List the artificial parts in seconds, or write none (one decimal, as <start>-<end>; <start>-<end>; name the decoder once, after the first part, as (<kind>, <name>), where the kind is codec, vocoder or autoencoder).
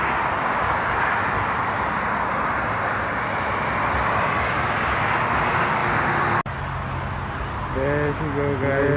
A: none